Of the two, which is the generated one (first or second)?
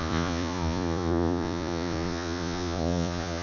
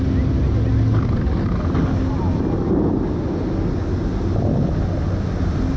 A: first